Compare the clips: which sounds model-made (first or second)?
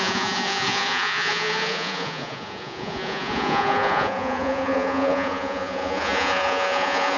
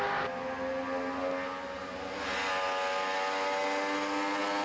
first